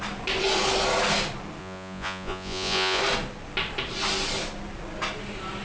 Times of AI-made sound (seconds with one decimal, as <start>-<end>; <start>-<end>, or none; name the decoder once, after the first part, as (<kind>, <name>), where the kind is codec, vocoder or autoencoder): 1.6-3.0 (vocoder, Vocos)